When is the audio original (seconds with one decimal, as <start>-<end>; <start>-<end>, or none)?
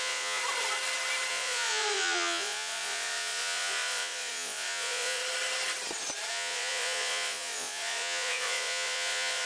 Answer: 0.4-1.3; 5.2-6.3